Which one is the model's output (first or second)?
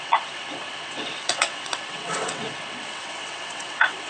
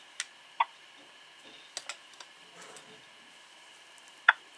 first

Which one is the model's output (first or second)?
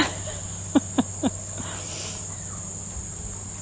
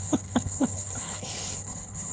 second